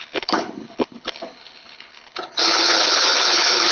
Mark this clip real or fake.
fake